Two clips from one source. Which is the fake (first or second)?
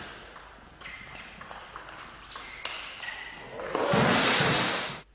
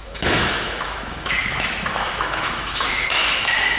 second